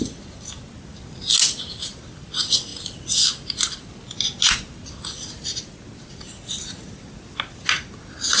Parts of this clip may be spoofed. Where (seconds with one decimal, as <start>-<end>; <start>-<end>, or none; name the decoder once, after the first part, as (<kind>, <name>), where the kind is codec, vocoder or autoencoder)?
none